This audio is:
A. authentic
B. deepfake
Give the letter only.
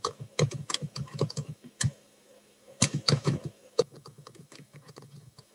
B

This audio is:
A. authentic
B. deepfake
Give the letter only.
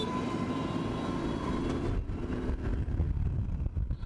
A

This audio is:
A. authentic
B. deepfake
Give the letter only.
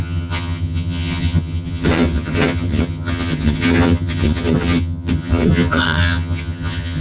B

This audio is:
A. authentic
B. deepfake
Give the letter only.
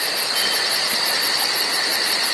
A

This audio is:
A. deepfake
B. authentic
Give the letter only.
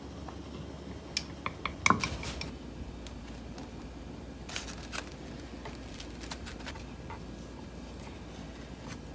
B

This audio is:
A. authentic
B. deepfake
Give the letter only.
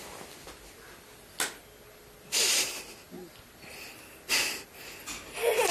A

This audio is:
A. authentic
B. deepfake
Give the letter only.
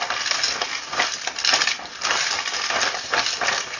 A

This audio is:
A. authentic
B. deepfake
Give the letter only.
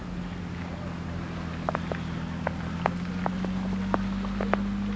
A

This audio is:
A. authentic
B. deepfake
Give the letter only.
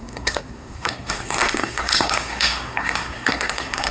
B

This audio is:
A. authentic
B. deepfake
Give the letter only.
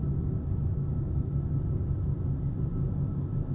A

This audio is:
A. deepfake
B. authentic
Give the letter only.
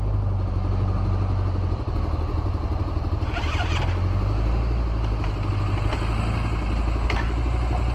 B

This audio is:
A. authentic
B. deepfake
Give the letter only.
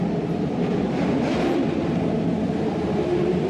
B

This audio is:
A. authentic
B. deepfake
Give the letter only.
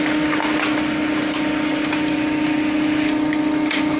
A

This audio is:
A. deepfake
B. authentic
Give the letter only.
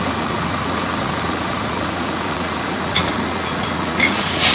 A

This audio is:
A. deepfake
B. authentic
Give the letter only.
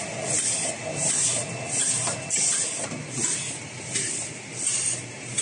B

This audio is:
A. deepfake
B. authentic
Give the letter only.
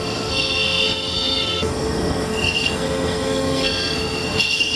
A